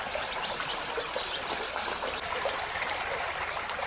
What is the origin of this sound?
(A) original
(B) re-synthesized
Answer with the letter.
A